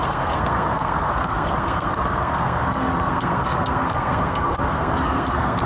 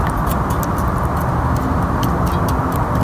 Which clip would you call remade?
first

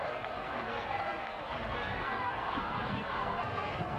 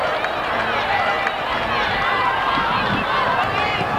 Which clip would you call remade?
first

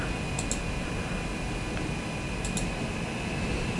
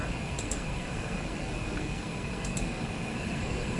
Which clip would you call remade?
second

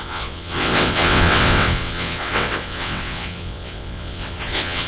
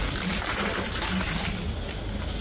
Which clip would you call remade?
first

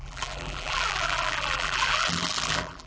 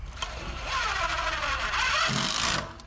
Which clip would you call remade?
first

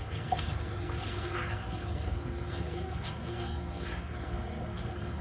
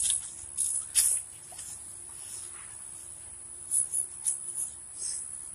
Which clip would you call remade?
first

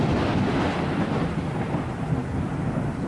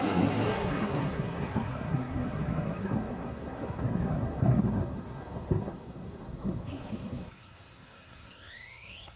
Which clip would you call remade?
second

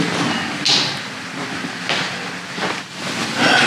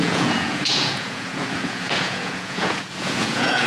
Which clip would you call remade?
second